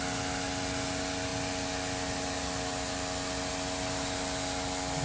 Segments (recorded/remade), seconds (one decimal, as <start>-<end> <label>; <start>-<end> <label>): 0.0-5.0 recorded